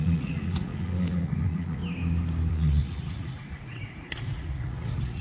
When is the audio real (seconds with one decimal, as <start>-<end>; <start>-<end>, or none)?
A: 1.8-2.5